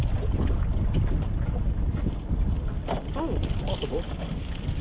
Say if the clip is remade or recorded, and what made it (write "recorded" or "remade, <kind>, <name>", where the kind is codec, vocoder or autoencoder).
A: recorded